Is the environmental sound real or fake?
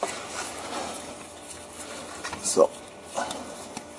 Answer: real